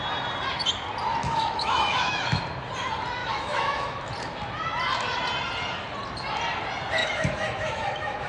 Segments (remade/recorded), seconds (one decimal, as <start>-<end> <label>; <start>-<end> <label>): 0.0-1.2 recorded; 1.2-2.4 remade; 2.4-3.2 recorded; 3.2-4.1 remade; 4.1-7.0 recorded; 7.0-8.3 remade